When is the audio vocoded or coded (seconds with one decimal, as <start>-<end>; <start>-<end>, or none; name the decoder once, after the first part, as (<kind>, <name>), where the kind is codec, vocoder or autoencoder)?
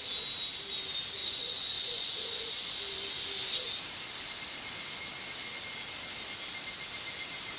1.2-2.7 (vocoder, Vocos)